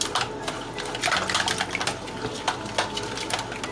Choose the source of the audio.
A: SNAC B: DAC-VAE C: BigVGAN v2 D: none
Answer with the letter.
D